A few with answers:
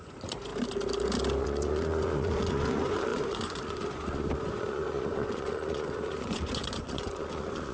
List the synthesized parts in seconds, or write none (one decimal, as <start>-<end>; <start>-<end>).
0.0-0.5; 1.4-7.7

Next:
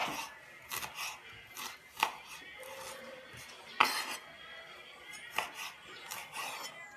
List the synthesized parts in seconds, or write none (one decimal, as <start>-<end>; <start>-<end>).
none

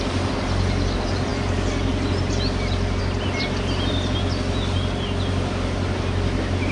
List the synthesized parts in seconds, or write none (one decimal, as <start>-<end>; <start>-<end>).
none

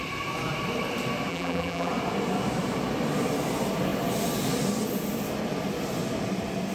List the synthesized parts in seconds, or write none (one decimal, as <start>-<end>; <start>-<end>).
1.3-1.9

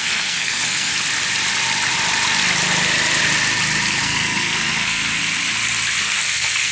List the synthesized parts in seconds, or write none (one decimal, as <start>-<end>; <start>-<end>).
0.0-0.9; 4.0-5.2; 6.0-6.7

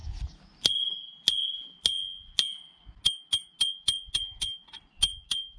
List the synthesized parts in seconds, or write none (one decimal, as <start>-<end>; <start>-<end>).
none

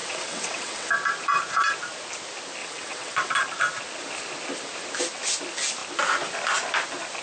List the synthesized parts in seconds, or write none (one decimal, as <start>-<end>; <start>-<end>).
0.0-0.9; 2.6-3.3

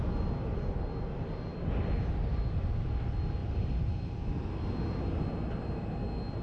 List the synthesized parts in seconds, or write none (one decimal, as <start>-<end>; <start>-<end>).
none